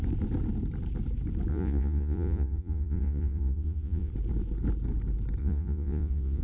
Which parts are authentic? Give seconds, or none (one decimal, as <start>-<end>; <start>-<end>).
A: 0.0-1.5; 4.1-5.4